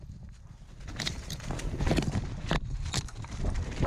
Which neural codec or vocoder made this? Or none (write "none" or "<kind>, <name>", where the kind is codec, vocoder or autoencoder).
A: none